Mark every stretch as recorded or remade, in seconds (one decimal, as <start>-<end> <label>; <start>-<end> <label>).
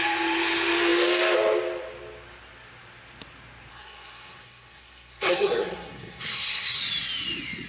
0.0-3.7 recorded; 3.7-6.8 remade; 6.8-7.7 recorded